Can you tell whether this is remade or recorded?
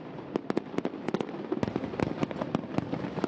recorded